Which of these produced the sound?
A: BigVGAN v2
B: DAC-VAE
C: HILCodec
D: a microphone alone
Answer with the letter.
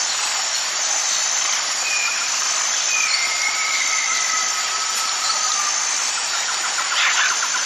A